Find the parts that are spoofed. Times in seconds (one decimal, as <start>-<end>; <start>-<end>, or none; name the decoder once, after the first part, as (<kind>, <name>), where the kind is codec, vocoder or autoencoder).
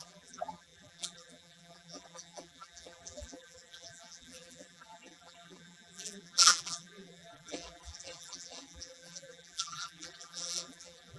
0.0-11.2 (vocoder, BigVGAN v2)